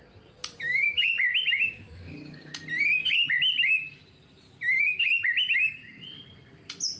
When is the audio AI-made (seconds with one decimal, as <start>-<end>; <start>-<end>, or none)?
0.4-1.1; 1.6-2.5